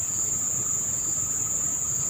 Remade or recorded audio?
remade